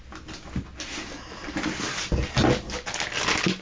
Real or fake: real